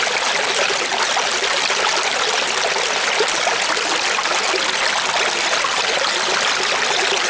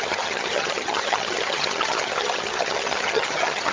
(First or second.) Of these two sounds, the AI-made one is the second